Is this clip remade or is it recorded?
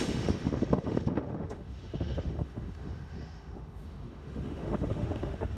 remade